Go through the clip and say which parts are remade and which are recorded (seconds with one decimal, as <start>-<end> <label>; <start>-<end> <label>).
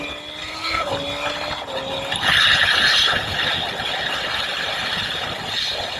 0.0-0.4 recorded; 0.4-0.9 remade; 0.9-6.0 recorded